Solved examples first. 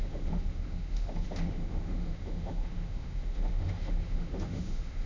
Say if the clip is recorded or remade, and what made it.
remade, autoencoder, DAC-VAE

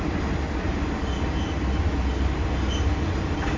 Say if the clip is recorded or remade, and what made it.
recorded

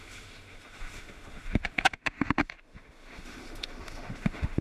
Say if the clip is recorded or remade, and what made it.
remade, autoencoder, DAC-VAE